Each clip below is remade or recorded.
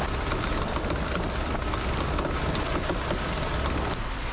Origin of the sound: recorded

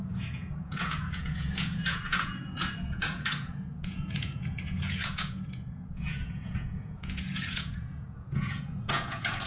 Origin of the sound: remade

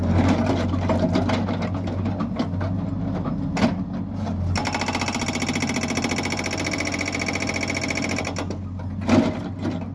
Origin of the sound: recorded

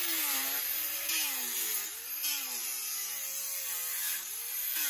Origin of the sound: remade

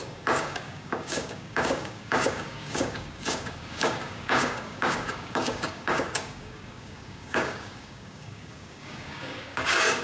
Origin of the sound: remade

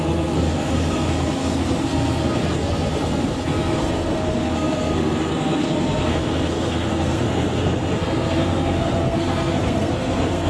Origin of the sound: remade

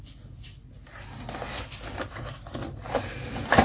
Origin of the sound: recorded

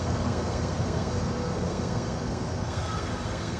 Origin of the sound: remade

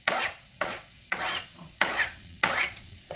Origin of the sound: remade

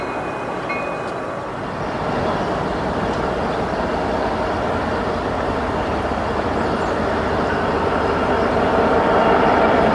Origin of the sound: recorded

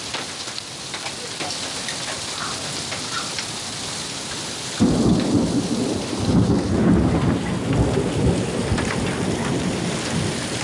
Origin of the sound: recorded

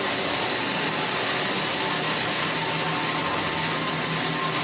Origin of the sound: recorded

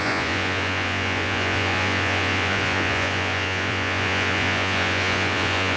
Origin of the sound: remade